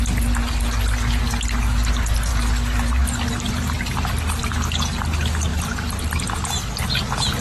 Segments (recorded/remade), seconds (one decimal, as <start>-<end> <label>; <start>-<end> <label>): 0.0-5.5 recorded; 5.5-6.2 remade; 6.2-7.4 recorded